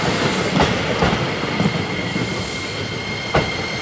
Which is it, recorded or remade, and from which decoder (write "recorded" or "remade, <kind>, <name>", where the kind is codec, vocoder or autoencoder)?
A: recorded